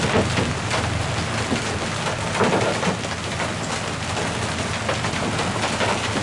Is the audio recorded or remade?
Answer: recorded